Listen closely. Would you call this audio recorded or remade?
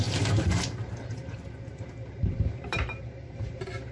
remade